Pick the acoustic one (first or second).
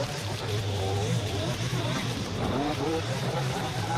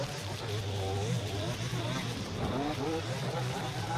second